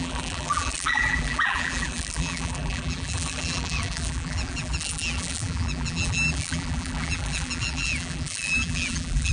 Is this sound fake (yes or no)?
yes